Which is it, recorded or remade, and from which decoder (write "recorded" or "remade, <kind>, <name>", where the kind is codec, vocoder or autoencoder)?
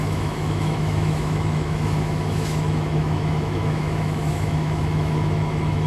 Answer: remade, autoencoder, DAC-VAE